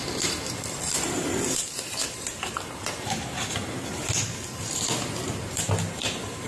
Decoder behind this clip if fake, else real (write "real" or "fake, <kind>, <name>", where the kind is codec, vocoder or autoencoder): fake, vocoder, BigVGAN v2